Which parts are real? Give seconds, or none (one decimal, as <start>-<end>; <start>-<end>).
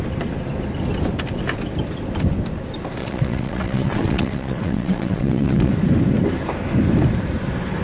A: 0.0-3.0; 5.7-7.8